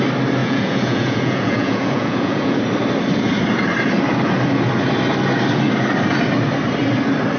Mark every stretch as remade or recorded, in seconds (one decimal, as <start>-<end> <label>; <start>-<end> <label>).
0.0-0.4 recorded; 0.4-2.6 remade; 2.6-7.4 recorded